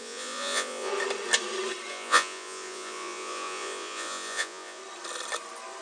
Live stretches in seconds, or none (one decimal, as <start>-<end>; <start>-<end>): 0.9-1.9; 4.8-5.8